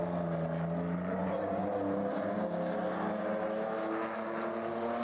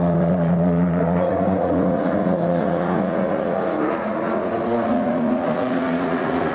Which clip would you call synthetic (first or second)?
second